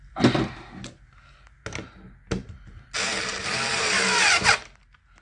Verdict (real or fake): real